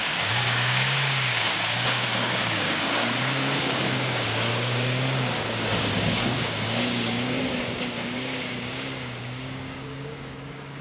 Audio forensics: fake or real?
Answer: fake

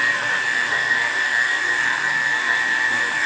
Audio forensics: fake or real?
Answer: fake